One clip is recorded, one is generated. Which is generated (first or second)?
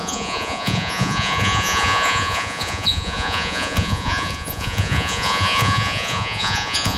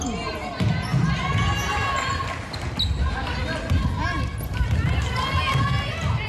first